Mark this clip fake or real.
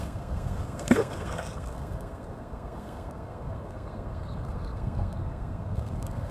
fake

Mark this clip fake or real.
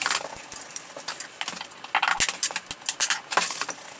real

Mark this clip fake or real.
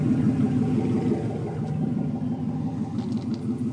real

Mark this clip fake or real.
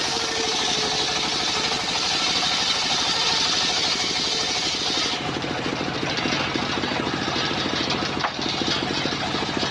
real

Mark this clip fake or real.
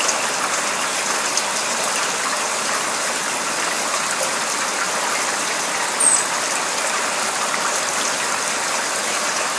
real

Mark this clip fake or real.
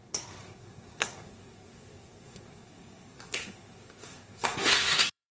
fake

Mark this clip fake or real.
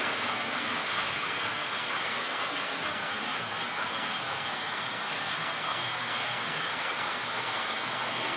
fake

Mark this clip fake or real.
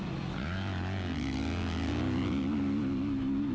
real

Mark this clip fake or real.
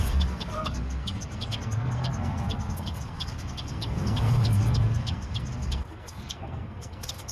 fake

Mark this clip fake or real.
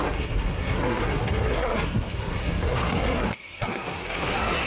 fake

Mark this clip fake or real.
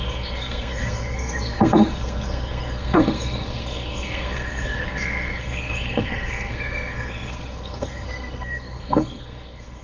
fake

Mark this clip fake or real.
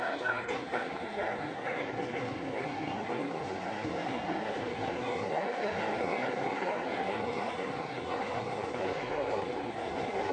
fake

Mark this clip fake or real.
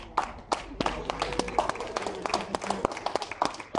real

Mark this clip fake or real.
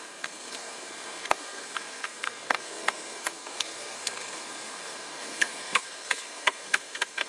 fake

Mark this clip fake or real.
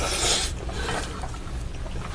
real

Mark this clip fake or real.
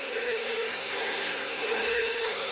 fake